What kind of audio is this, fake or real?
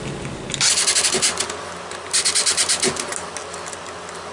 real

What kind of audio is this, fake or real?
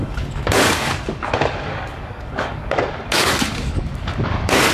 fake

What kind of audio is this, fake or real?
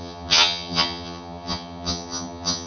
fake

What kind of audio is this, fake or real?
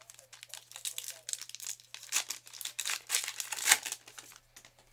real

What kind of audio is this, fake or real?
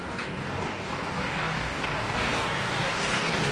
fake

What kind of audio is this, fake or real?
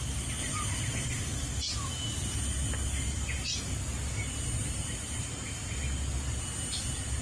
real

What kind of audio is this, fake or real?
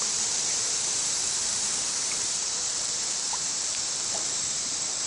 fake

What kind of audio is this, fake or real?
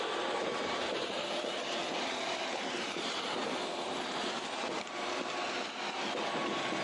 fake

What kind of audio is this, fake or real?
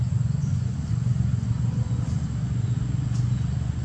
fake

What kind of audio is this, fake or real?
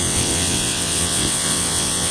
fake